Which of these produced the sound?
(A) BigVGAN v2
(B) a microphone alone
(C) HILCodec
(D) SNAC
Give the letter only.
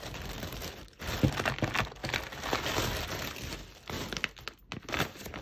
B